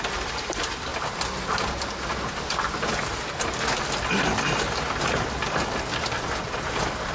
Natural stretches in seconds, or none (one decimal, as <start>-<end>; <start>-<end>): 0.9-5.0